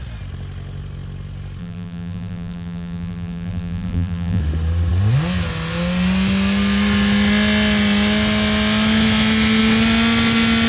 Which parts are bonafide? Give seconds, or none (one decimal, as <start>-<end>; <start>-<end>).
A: 0.0-1.6; 4.4-10.7